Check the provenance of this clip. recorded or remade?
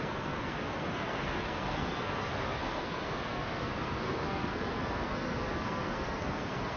remade